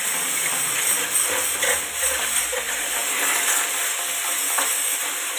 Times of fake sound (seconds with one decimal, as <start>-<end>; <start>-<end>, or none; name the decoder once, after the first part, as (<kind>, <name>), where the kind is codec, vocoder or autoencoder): none